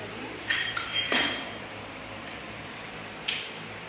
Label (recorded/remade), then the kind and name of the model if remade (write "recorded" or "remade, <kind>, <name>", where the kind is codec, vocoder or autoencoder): remade, vocoder, BigVGAN v2